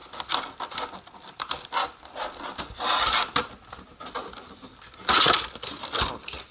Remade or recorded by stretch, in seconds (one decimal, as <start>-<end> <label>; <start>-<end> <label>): 0.0-6.5 recorded